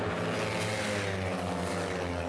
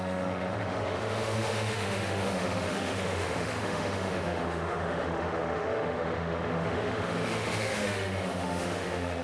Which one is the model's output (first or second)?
second